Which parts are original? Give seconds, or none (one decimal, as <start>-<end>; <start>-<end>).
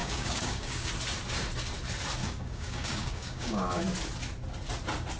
0.9-2.2; 3.8-5.2